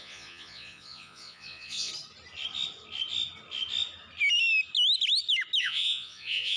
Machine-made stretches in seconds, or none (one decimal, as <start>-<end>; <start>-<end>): 0.0-1.9; 5.6-6.6